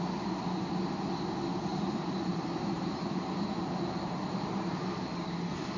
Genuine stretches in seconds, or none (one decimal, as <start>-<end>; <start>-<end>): 0.0-1.7; 4.7-5.8